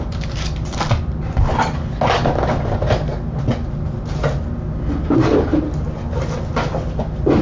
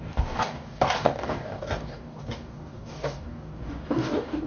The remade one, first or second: second